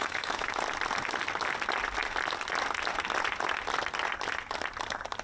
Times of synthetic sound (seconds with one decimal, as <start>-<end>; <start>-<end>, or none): 0.0-0.6